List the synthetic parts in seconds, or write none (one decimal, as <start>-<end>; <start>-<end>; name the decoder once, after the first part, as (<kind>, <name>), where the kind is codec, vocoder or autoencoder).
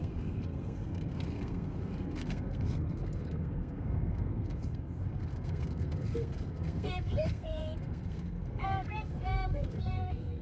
0.0-10.4 (codec, SNAC)